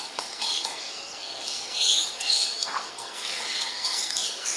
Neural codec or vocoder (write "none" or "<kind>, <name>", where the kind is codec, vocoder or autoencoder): codec, SNAC